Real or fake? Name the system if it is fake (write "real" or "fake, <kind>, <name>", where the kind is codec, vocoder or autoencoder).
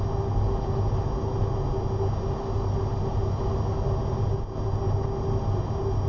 real